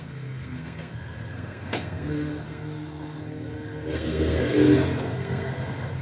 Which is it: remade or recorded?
remade